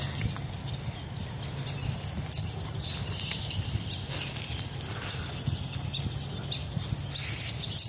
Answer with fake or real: real